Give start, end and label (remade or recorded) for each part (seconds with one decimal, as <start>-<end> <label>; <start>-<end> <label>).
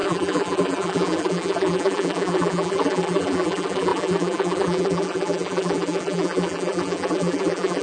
0.0-7.8 remade